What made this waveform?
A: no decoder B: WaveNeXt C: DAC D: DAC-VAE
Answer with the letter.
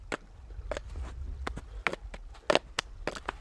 A